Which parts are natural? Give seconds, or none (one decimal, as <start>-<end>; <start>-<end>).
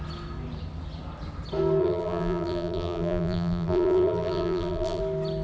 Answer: 0.0-1.8; 5.0-5.4